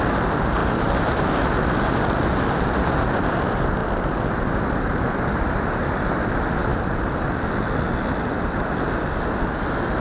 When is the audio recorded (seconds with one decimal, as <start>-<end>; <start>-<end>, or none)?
0.0-10.0